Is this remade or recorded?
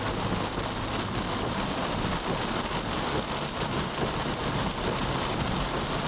recorded